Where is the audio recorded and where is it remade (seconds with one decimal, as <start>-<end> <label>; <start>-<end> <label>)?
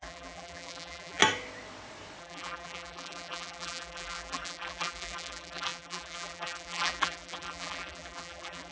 0.0-1.2 remade; 1.2-2.2 recorded; 2.2-8.7 remade